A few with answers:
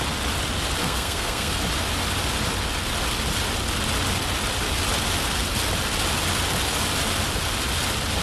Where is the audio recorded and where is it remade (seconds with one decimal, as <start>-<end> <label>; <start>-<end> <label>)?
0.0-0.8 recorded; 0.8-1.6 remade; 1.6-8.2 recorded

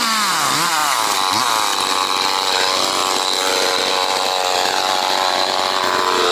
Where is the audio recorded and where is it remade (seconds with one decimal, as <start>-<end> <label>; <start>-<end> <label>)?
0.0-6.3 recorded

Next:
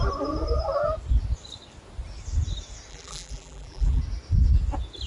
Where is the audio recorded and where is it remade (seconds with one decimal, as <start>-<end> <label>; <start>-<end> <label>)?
0.0-2.9 recorded; 2.9-4.0 remade; 4.0-5.1 recorded

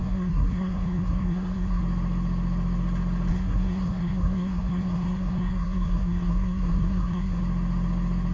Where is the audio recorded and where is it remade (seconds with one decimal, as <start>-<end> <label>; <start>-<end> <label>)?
0.0-1.8 remade; 1.8-3.3 recorded; 3.3-7.4 remade; 7.4-8.3 recorded